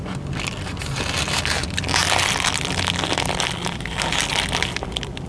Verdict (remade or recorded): recorded